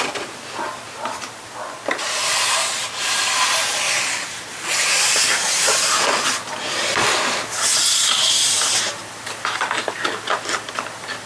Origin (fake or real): real